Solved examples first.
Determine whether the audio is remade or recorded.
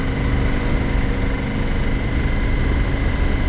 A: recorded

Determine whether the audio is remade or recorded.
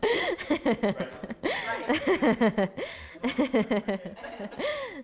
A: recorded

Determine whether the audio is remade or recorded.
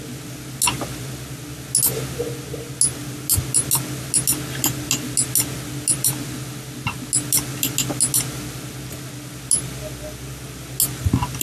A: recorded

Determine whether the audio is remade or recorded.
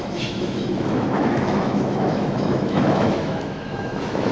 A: remade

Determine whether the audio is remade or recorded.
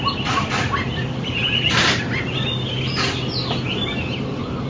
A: recorded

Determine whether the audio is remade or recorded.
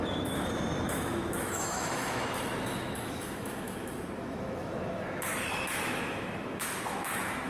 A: remade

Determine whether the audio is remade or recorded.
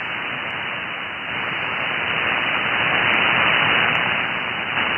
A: recorded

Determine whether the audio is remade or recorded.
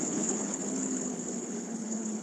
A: remade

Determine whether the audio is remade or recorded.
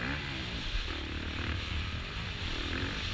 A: remade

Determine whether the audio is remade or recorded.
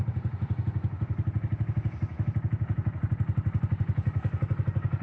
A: recorded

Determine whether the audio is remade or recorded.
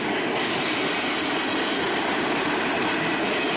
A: recorded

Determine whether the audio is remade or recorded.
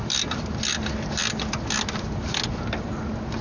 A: recorded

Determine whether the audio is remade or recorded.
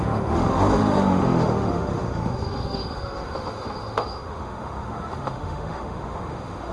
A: remade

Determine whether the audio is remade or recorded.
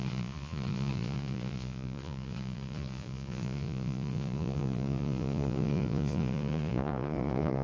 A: remade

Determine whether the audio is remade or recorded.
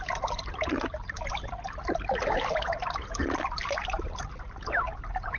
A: recorded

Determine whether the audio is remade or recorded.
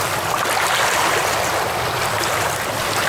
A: recorded